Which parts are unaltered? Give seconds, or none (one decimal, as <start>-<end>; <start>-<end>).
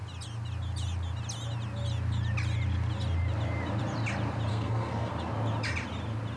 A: 0.0-4.5; 5.1-6.4